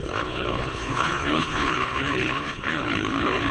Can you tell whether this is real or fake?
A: fake